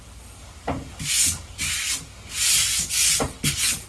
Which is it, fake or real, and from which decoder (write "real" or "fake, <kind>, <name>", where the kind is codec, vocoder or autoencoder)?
real